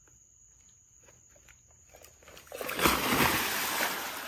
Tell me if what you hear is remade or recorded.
recorded